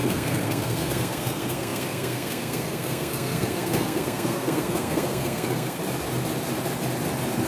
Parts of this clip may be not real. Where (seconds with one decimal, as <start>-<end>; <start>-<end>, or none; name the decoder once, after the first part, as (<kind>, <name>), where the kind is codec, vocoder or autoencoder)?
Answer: 0.0-5.8 (codec, SNAC)